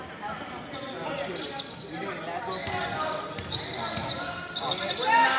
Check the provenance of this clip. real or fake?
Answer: real